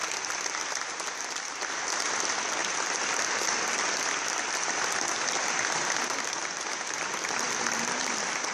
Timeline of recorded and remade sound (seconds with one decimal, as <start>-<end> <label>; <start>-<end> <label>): 0.0-8.5 recorded